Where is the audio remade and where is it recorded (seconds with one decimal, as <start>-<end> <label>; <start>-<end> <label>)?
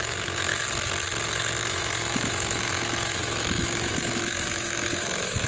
0.0-0.5 remade; 0.5-1.6 recorded; 1.6-5.5 remade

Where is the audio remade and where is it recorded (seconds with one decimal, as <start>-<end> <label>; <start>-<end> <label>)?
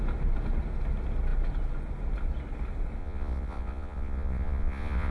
0.0-3.0 recorded; 3.0-5.1 remade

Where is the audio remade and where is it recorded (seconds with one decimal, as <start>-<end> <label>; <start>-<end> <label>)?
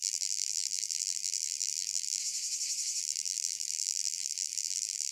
0.0-2.2 remade; 2.2-3.0 recorded; 3.0-5.1 remade